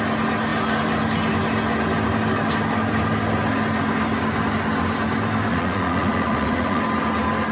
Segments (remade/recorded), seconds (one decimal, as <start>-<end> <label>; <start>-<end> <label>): 0.0-5.5 recorded; 5.5-6.8 remade; 6.8-7.5 recorded